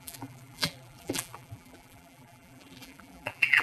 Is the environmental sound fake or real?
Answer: fake